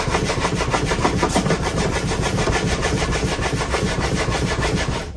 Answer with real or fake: fake